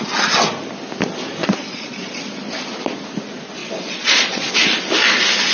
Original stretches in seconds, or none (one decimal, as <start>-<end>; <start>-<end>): 0.0-1.4; 2.2-3.6; 4.5-5.5